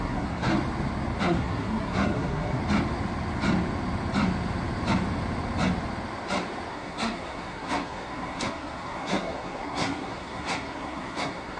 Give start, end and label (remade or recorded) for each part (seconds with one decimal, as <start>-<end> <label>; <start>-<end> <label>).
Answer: 0.0-0.5 remade; 0.5-1.2 recorded; 1.2-2.6 remade; 2.6-6.7 recorded; 6.7-11.6 remade